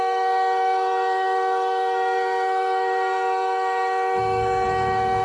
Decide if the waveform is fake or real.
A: fake